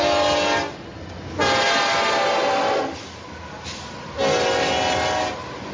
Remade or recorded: recorded